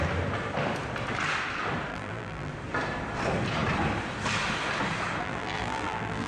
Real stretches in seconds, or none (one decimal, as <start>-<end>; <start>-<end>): 0.0-1.9; 2.5-5.2